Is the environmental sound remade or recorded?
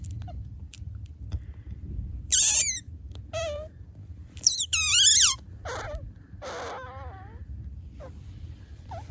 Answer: remade